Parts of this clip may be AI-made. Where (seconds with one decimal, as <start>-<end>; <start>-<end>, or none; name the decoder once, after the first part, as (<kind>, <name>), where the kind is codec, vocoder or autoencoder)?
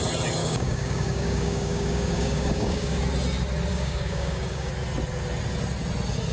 0.4-3.0 (codec, DAC); 3.7-4.7